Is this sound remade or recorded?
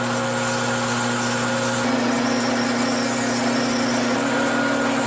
recorded